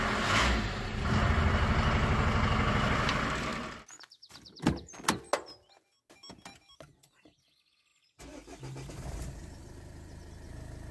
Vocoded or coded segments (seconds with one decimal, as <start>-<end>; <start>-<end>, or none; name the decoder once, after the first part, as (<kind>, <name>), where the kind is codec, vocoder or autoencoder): none